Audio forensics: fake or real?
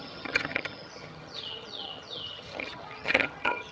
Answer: fake